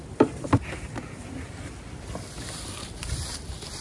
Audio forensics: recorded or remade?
remade